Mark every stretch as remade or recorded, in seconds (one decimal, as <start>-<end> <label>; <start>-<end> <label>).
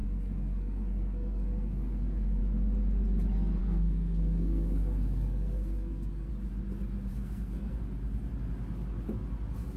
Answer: 0.0-2.4 remade; 2.4-3.6 recorded; 3.6-6.3 remade; 6.3-7.1 recorded; 7.1-7.8 remade; 7.8-9.8 recorded